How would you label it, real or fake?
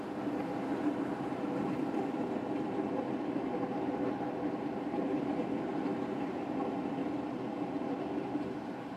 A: fake